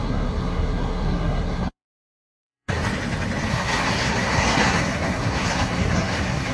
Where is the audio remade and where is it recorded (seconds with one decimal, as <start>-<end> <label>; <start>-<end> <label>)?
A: 0.0-2.8 remade; 2.8-3.5 recorded; 3.5-6.5 remade